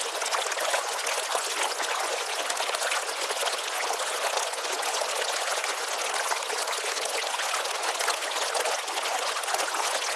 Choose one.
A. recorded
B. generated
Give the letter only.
B